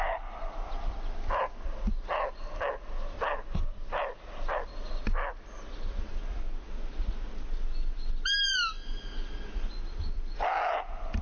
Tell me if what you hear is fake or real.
real